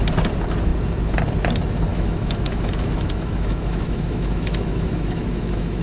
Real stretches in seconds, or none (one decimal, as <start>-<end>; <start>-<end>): 0.0-1.9